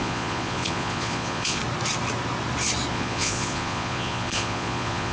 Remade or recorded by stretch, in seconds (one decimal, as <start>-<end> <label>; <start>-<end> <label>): 0.0-1.6 remade; 1.6-2.9 recorded; 2.9-5.1 remade